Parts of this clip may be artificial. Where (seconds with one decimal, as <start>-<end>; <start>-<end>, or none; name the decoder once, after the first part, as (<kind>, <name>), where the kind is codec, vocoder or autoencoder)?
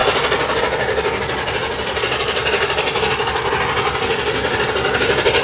none